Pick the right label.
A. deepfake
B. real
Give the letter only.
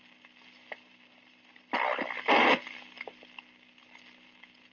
B